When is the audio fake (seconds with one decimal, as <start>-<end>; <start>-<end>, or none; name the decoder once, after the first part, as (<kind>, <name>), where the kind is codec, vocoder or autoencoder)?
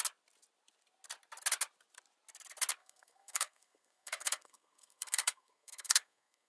2.8-6.5 (codec, SNAC)